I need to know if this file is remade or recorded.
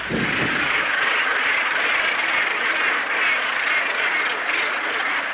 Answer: recorded